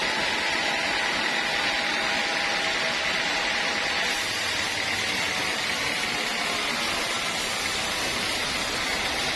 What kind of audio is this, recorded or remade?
recorded